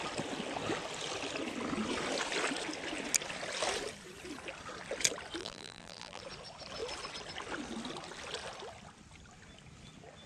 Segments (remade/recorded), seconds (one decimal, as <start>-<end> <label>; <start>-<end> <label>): 0.0-5.4 recorded; 5.4-6.2 remade; 6.2-10.3 recorded